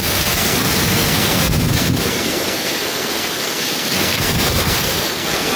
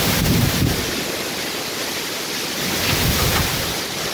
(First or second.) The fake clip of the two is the first